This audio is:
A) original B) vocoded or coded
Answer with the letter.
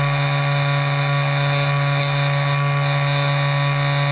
A